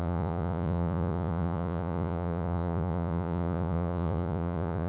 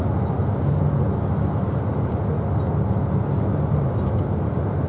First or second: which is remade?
first